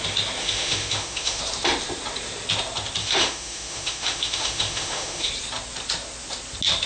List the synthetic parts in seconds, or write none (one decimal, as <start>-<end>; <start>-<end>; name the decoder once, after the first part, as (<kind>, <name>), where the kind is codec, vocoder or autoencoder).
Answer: 0.4-1.4 (autoencoder, DAC-VAE); 3.0-5.3